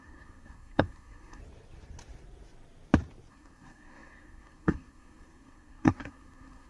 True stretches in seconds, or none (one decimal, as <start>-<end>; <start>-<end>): 1.4-3.3